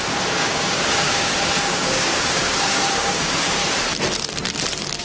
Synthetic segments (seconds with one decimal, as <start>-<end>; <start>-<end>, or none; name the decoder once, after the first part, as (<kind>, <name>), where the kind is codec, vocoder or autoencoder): 0.0-3.6 (codec, DAC)